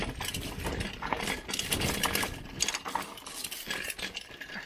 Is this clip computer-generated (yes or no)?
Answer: no